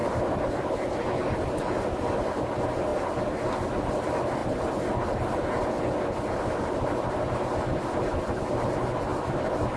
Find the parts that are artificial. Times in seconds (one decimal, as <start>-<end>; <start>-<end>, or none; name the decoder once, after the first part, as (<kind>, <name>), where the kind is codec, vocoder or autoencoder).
0.0-1.2 (vocoder, BigVGAN v2); 9.1-9.8